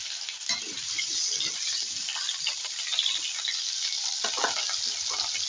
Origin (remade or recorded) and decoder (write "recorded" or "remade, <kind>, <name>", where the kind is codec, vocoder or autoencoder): recorded